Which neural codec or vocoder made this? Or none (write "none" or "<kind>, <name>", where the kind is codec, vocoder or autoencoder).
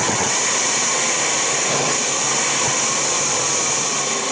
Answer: none